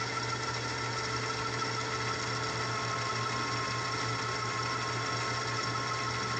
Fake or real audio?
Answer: real